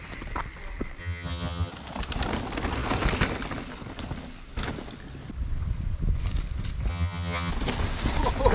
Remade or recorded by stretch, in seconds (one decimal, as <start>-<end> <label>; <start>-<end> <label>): 0.0-1.0 recorded; 1.0-1.7 remade; 1.7-6.9 recorded; 6.9-7.5 remade; 7.5-8.5 recorded